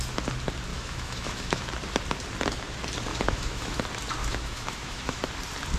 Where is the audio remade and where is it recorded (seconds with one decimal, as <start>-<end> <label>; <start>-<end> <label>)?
0.0-0.7 recorded; 0.7-1.7 remade; 1.7-3.1 recorded; 3.1-3.8 remade; 3.8-4.2 recorded; 4.2-5.2 remade; 5.2-5.8 recorded